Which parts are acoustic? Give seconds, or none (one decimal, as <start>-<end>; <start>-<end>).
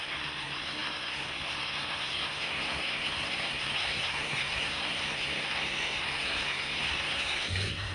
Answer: none